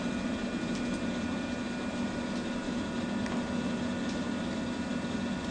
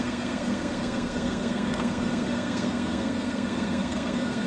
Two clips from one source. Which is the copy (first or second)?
second